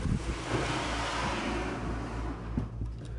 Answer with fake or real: real